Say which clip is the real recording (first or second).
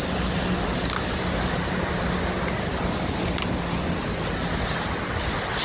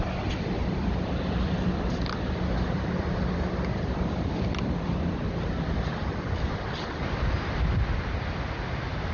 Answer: first